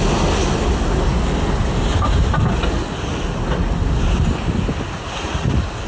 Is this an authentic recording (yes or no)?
yes